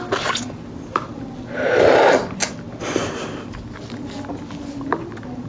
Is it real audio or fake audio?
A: real